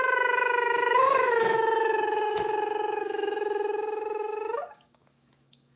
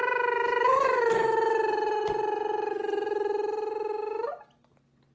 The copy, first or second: first